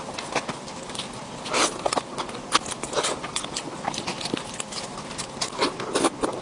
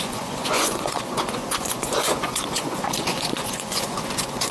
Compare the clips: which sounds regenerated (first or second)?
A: second